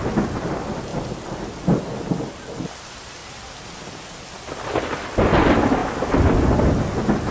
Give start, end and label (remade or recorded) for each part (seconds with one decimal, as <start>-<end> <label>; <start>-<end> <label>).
0.0-7.3 recorded